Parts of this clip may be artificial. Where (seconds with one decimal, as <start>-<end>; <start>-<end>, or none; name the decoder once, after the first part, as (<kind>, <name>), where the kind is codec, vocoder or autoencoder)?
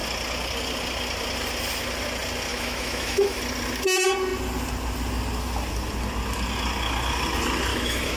2.5-3.4 (autoencoder, DAC-VAE); 7.7-8.2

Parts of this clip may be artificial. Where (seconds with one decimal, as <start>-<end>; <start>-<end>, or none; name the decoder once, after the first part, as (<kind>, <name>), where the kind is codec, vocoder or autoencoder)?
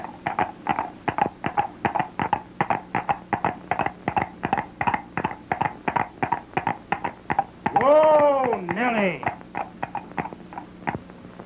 none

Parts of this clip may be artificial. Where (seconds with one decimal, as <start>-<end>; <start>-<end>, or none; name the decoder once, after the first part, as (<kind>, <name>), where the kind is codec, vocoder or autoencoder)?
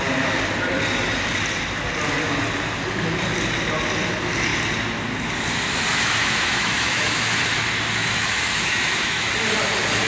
5.9-7.4 (autoencoder, DAC-VAE); 8.0-9.3